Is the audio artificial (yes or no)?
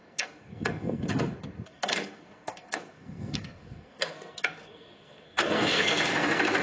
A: yes